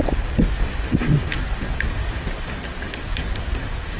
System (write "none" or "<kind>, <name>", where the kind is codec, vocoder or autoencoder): none